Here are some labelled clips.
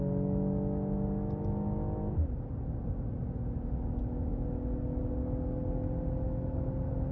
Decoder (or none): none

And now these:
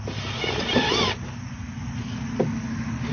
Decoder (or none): none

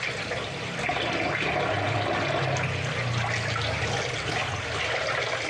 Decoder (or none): none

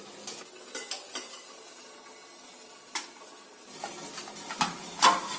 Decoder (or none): none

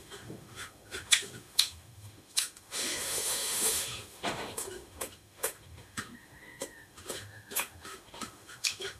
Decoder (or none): autoencoder, DAC-VAE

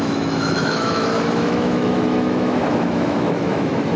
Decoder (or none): autoencoder, DAC-VAE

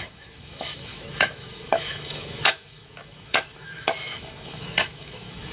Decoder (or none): autoencoder, DAC-VAE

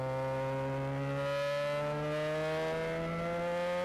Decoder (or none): none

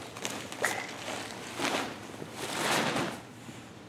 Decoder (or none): none